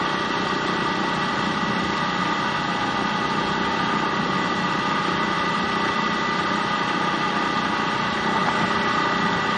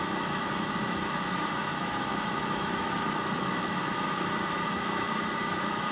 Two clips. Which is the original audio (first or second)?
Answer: first